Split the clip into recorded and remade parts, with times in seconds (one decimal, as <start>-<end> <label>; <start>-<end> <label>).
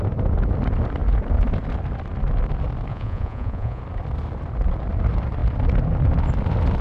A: 0.0-2.9 recorded; 2.9-3.8 remade; 3.8-6.8 recorded